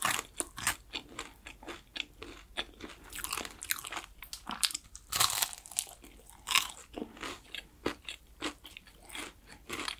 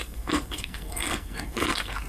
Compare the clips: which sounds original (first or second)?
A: first